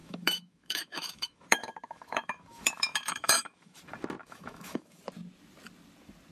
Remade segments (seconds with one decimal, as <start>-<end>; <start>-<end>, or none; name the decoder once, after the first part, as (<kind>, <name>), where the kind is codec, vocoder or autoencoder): 0.0-3.8 (autoencoder, DAC-VAE); 4.2-5.0